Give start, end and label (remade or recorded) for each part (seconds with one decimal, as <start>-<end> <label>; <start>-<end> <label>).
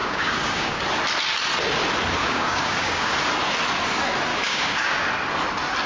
0.0-0.8 remade; 0.8-2.2 recorded; 2.2-3.1 remade; 3.1-4.3 recorded; 4.3-5.1 remade; 5.1-5.9 recorded